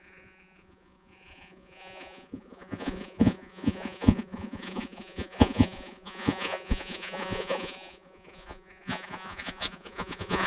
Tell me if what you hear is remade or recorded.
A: remade